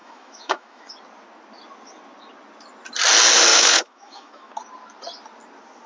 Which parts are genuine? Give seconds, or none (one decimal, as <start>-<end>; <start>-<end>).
0.9-3.5; 4.5-5.9